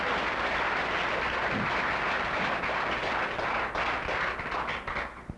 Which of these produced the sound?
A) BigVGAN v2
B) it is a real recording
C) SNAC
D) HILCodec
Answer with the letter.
B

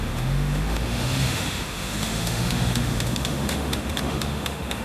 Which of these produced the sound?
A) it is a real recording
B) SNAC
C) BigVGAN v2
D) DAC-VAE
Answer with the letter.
D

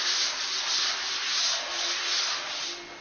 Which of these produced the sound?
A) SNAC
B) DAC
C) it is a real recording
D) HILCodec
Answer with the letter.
C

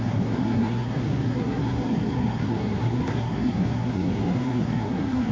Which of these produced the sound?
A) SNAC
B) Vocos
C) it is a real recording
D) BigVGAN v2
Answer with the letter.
A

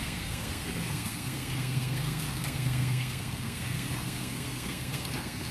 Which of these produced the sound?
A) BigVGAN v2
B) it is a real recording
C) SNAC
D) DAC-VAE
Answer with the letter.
C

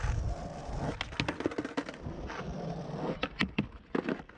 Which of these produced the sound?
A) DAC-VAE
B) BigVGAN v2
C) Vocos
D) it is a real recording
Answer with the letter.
D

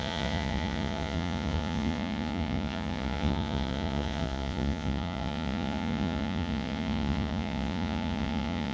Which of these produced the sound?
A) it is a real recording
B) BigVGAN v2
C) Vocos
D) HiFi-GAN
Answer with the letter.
C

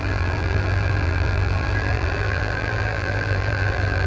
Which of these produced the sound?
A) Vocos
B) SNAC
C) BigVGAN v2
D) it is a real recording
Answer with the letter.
C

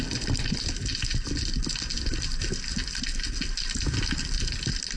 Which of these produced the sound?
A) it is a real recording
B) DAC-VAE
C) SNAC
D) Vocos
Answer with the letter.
A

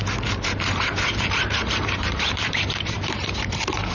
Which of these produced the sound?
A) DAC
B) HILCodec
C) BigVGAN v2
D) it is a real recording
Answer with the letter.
C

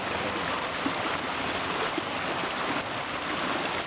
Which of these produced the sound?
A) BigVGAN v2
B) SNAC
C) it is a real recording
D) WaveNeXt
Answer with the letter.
C